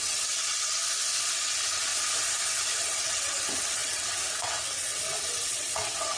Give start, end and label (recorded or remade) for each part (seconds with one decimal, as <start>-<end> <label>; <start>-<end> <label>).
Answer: 0.0-0.8 remade; 0.8-1.3 recorded; 1.3-1.9 remade; 1.9-2.8 recorded; 2.8-6.2 remade